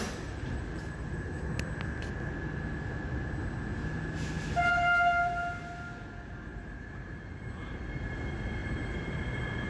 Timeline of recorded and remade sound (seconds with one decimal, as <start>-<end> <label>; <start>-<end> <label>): 0.0-6.5 recorded; 6.5-7.8 remade; 7.8-8.6 recorded; 8.6-9.7 remade